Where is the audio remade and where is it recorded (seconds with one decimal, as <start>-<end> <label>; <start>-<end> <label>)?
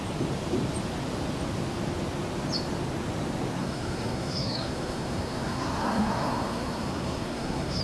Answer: 0.0-3.6 recorded; 3.6-7.8 remade